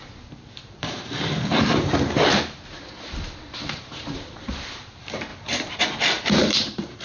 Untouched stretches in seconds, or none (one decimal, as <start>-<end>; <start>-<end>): none

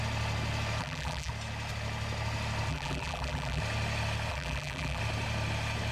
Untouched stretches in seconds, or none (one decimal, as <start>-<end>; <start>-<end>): 0.0-0.8; 1.3-2.7; 3.6-4.3; 5.0-5.9

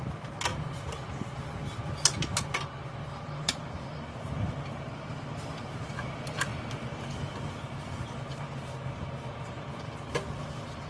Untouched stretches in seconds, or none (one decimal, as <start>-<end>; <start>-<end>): 0.5-3.0; 6.5-10.3

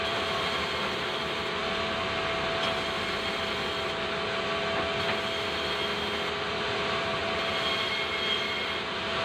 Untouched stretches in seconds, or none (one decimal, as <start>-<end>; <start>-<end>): 1.6-6.5; 7.2-9.2

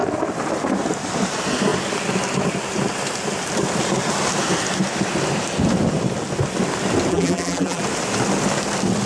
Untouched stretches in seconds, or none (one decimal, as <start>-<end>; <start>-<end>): 0.0-7.1; 7.8-9.1